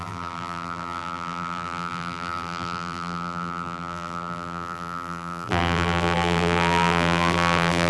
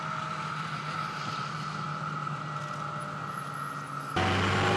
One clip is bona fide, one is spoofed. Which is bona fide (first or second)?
second